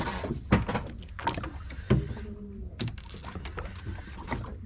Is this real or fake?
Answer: real